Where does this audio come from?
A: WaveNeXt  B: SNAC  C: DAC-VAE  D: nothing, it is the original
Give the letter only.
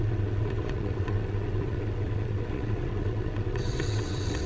A